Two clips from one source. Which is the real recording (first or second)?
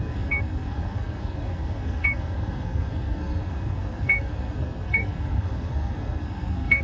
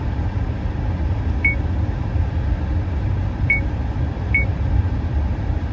second